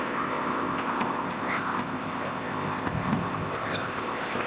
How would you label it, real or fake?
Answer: fake